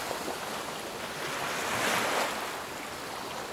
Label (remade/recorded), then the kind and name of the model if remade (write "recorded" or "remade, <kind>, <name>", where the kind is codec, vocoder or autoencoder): recorded